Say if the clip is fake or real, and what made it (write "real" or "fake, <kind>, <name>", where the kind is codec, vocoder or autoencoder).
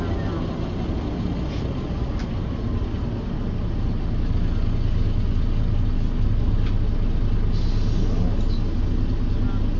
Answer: real